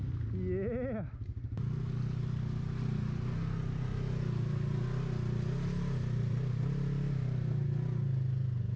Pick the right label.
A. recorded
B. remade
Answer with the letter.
A